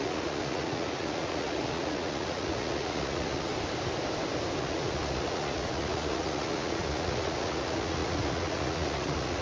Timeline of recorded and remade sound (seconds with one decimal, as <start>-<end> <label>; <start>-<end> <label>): 0.0-3.5 remade; 3.5-4.6 recorded; 4.6-9.4 remade